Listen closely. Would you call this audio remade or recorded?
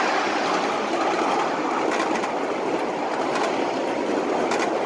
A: recorded